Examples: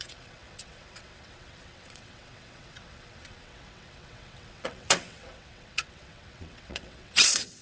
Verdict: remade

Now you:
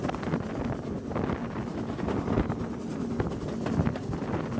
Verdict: recorded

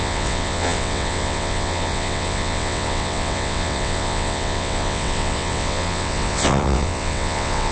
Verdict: remade